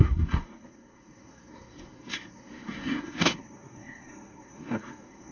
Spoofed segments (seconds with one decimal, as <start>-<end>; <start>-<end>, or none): 0.0-5.3